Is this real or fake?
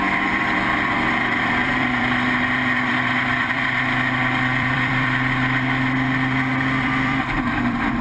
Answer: fake